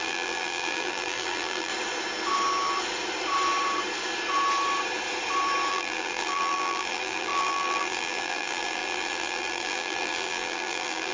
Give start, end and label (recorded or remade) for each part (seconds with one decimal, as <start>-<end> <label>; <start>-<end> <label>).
0.0-1.7 remade; 1.7-5.7 recorded; 5.7-11.1 remade